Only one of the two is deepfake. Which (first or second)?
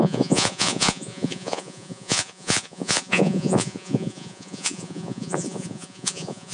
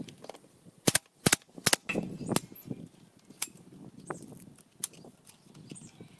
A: first